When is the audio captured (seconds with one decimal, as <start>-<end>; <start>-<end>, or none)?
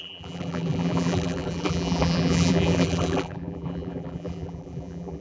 none